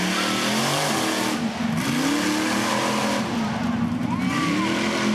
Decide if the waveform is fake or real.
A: real